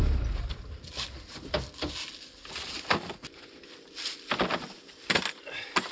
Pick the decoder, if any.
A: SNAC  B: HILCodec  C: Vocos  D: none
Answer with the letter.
D